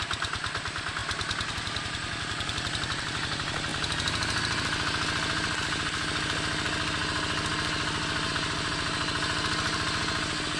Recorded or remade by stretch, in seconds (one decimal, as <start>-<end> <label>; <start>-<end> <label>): 0.0-10.6 recorded